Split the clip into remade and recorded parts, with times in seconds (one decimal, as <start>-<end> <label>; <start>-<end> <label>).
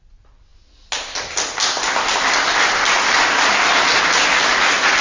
0.0-5.0 recorded